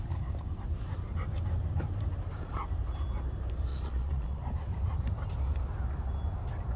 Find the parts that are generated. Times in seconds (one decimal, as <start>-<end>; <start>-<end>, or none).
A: 3.7-4.4